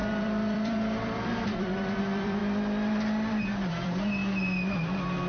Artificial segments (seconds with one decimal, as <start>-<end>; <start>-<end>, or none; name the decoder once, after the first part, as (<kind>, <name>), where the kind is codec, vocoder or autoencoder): 0.0-2.4 (vocoder, BigVGAN v2); 3.7-4.2